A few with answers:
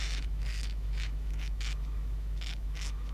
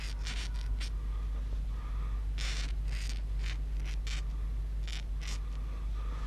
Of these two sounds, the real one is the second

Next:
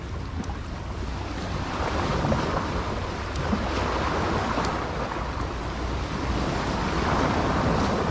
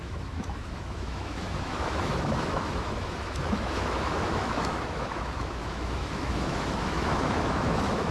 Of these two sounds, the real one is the first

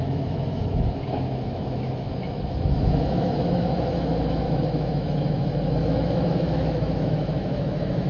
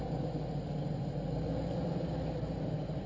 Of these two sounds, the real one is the second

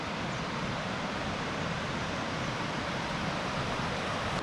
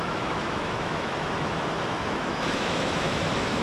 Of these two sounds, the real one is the first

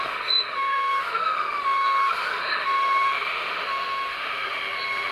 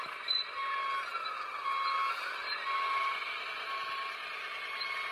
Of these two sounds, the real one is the second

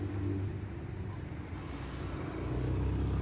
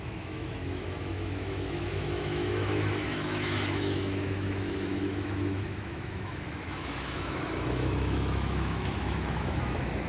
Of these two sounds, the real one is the first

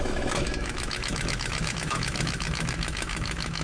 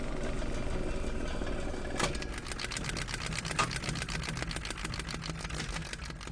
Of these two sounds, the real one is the second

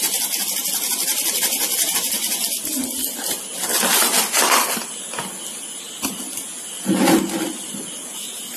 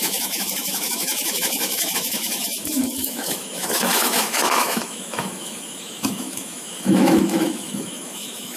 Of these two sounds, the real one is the first